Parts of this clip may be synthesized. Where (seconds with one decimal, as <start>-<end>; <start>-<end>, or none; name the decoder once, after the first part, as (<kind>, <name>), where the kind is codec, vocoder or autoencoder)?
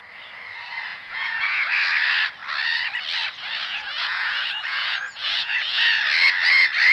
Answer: 0.9-1.7 (vocoder, Vocos); 3.6-6.0